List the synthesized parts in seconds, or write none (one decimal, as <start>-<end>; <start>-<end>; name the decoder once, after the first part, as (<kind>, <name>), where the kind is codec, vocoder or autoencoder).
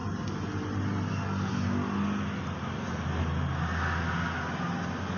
none